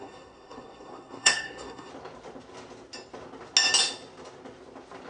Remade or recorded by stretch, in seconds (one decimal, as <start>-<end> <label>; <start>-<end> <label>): 0.0-1.9 remade; 1.9-5.1 recorded